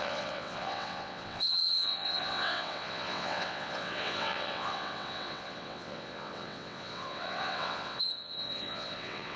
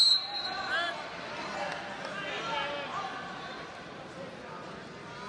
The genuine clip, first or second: second